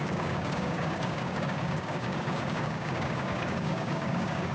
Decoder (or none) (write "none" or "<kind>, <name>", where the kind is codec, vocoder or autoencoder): codec, DAC